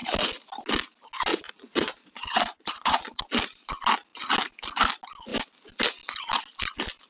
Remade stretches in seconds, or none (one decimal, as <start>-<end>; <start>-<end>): 1.3-3.2